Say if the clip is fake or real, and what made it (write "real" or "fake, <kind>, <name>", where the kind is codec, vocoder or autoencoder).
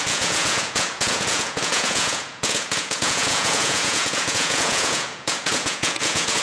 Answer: fake, vocoder, Vocos